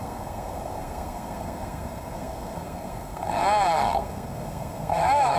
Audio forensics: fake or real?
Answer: fake